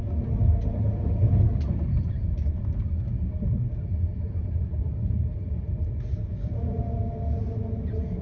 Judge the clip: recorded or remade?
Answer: recorded